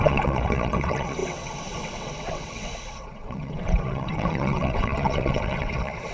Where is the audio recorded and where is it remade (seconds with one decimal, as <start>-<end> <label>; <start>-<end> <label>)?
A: 0.0-6.1 remade